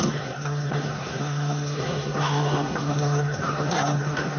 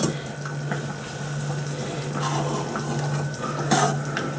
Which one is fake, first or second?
first